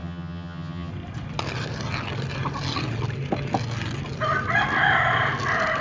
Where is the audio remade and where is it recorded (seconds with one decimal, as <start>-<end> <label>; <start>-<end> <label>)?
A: 0.0-0.9 remade; 0.9-5.8 recorded